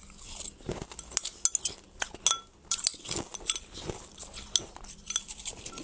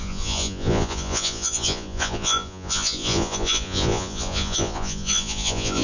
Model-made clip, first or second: second